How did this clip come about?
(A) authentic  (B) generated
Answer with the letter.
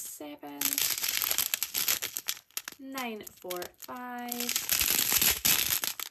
A